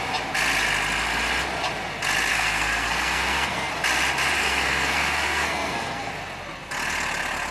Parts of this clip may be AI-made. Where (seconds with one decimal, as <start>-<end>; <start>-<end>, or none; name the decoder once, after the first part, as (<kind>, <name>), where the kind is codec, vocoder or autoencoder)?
2.3-3.7 (codec, SNAC); 4.4-6.1